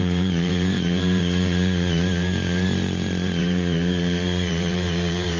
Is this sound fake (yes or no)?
yes